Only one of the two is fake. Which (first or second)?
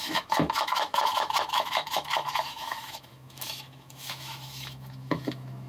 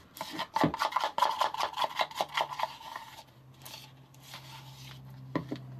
first